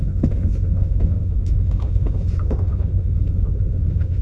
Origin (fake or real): fake